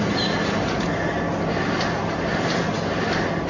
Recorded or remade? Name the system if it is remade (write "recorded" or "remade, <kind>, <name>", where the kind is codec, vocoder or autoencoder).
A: recorded